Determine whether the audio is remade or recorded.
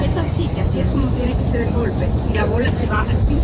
remade